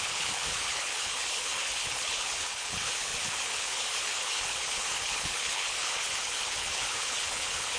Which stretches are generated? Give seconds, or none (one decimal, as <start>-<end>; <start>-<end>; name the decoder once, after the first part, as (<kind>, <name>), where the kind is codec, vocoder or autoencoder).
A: 0.0-7.8 (codec, HILCodec)